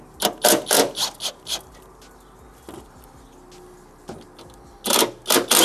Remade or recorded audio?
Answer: recorded